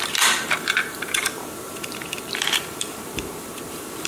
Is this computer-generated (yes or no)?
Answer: yes